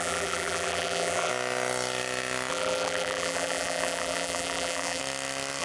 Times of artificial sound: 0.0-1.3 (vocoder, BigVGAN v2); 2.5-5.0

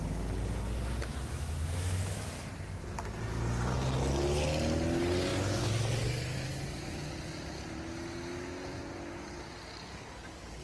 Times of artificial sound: 1.1-2.5 (autoencoder, DAC-VAE)

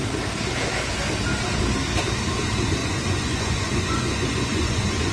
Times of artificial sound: 2.8-5.1 (vocoder, Vocos)

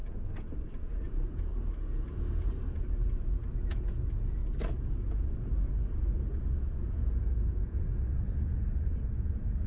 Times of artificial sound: 0.0-1.5 (vocoder, Vocos); 3.7-4.4; 6.5-9.7

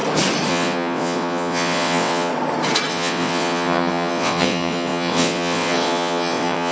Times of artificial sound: 0.5-2.3 (vocoder, WaveNeXt); 2.9-6.7

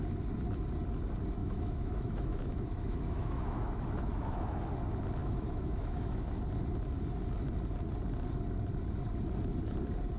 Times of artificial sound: 1.4-4.6 (autoencoder, DAC-VAE); 5.2-6.3